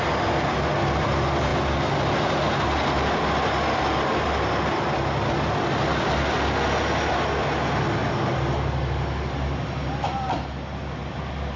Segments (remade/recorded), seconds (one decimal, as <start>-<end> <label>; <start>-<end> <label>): 0.0-11.6 recorded

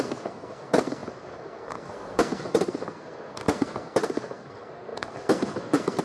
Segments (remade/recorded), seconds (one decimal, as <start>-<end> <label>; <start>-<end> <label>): 0.0-6.0 remade

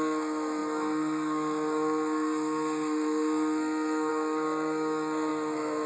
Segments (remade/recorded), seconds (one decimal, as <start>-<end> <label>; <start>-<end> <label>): 0.0-5.9 remade